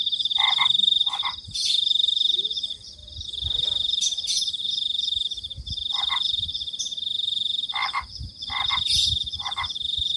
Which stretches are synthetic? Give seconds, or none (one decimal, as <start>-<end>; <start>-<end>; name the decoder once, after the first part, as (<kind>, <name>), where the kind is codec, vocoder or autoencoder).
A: none